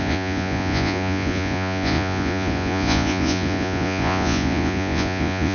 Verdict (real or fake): fake